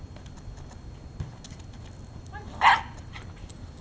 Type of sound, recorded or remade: recorded